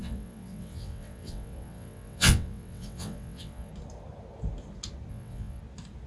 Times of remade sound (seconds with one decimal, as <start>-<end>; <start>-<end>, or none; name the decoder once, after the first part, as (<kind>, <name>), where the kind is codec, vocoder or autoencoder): 0.0-3.7 (vocoder, WaveNeXt); 5.1-5.6